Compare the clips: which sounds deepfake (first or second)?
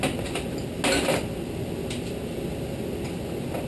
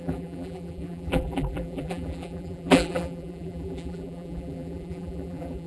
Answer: second